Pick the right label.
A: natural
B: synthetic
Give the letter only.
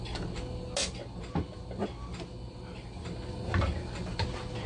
A